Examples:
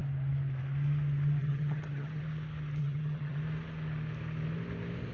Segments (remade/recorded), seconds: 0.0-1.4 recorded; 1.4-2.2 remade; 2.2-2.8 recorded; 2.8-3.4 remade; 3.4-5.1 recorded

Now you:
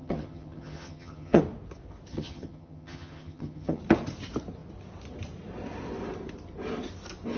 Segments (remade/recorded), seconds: 0.0-1.4 remade; 1.4-2.1 recorded; 2.1-3.8 remade; 3.8-7.4 recorded

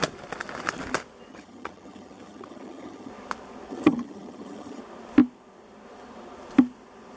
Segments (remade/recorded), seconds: 0.0-1.3 recorded; 1.3-3.1 remade; 3.1-3.7 recorded; 3.7-4.8 remade; 4.8-7.2 recorded